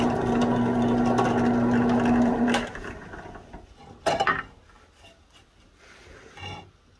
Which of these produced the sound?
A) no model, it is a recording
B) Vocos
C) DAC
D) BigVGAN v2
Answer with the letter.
A